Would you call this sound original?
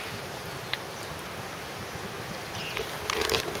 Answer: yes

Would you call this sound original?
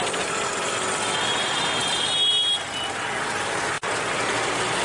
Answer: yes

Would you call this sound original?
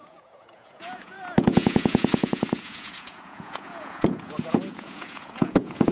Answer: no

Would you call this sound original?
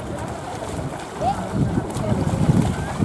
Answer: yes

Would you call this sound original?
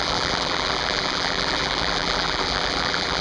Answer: no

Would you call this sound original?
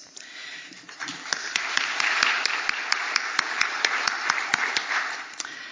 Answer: no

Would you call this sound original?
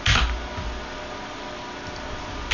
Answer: yes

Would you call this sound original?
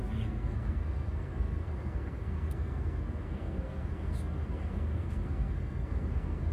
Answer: no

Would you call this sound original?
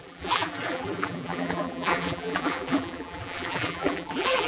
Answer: no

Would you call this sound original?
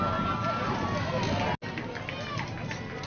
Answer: yes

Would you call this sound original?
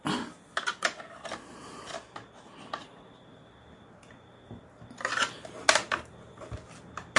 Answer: yes